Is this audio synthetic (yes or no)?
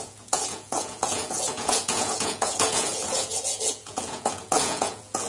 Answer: yes